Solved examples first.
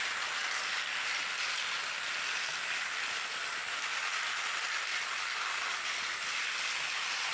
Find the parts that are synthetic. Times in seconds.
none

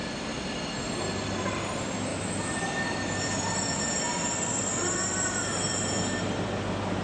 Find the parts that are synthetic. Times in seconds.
2.1-3.9

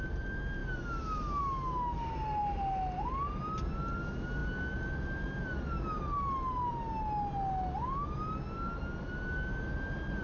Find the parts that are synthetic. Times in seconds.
none